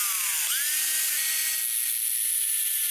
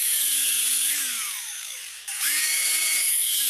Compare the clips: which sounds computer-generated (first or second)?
second